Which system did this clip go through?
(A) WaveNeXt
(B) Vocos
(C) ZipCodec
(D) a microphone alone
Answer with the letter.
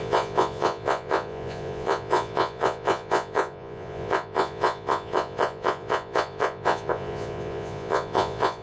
B